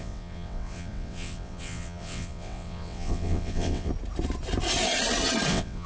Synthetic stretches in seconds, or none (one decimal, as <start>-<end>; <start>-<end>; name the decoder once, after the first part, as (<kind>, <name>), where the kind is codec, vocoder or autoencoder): 0.0-3.9 (vocoder, WaveNeXt); 5.5-5.9